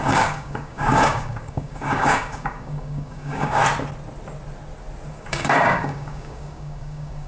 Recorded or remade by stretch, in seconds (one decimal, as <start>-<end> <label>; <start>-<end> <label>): 0.0-3.6 remade; 3.6-5.1 recorded; 5.1-7.3 remade